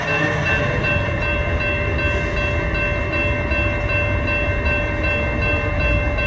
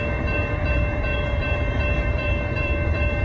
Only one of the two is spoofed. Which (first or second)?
second